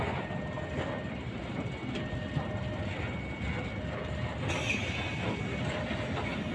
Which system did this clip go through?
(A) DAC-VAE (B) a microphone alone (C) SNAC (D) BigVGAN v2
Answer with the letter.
B